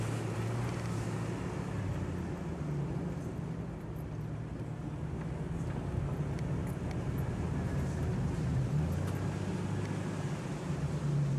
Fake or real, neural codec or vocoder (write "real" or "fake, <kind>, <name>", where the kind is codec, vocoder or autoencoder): real